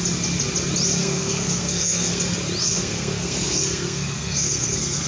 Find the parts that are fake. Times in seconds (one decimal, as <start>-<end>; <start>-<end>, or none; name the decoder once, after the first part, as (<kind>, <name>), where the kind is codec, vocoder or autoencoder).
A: 1.0-2.2 (codec, SNAC); 2.6-5.1